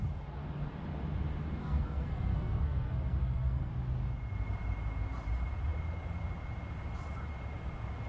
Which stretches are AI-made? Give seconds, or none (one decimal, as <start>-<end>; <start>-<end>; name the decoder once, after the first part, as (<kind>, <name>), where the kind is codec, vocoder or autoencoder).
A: 1.6-3.7 (codec, SNAC)